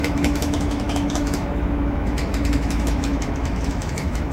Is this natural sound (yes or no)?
no